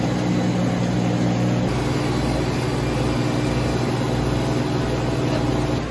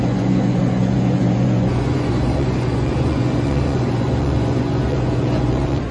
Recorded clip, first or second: first